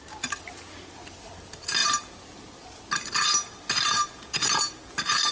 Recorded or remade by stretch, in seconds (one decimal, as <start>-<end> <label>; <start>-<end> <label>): 0.0-5.3 recorded